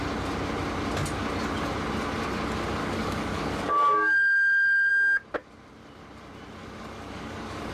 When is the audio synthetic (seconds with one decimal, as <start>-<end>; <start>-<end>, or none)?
2.8-4.9; 6.6-7.7